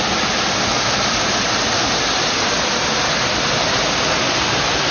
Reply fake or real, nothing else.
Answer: real